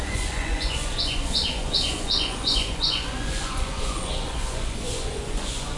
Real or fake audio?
fake